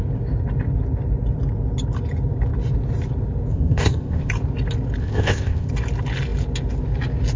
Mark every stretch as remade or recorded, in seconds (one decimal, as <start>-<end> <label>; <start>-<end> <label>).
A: 0.0-3.5 recorded; 3.5-4.3 remade; 4.3-5.0 recorded; 5.0-5.7 remade; 5.7-7.4 recorded

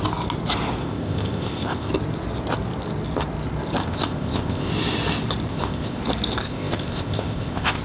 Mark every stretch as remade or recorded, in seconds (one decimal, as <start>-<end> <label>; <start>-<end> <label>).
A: 0.0-0.8 recorded; 0.8-1.9 remade; 1.9-3.8 recorded; 3.8-4.7 remade; 4.7-5.5 recorded; 5.5-6.0 remade; 6.0-6.4 recorded; 6.4-7.8 remade

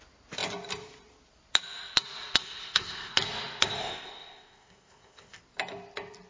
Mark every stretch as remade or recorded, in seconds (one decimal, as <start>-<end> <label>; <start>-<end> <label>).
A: 0.0-2.4 recorded; 2.4-3.1 remade; 3.1-3.8 recorded; 3.8-5.4 remade; 5.4-6.3 recorded

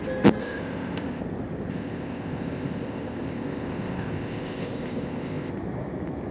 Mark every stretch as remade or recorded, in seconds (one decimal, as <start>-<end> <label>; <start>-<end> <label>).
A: 0.0-0.4 recorded; 0.4-1.2 remade; 1.2-1.7 recorded; 1.7-5.5 remade; 5.5-6.3 recorded

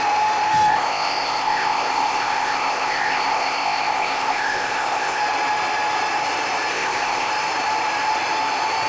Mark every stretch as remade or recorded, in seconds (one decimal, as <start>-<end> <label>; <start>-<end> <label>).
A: 0.0-0.7 recorded; 0.7-5.2 remade; 5.2-6.7 recorded; 6.7-7.3 remade; 7.3-8.9 recorded

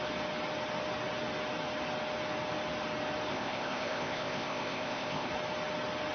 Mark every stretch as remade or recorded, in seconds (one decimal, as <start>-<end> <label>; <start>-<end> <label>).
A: 0.0-3.3 recorded; 3.3-5.3 remade; 5.3-6.1 recorded

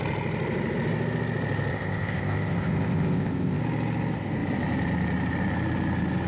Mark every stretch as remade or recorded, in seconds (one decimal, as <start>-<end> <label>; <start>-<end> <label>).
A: 0.0-1.7 recorded; 1.7-3.6 remade; 3.6-6.3 recorded

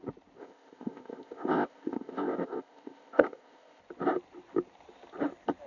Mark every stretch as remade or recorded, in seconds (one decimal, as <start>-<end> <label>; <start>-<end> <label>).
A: 0.0-0.4 recorded; 0.4-3.8 remade; 3.8-5.7 recorded